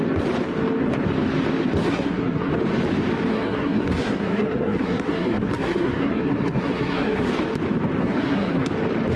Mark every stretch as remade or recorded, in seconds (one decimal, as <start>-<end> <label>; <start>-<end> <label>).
0.0-1.8 recorded; 1.8-2.5 remade; 2.5-3.3 recorded; 3.3-7.3 remade; 7.3-8.0 recorded; 8.0-8.7 remade; 8.7-9.2 recorded